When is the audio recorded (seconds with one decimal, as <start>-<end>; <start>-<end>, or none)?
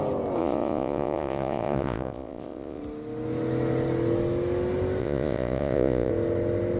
0.0-0.4; 2.8-5.0; 6.1-6.8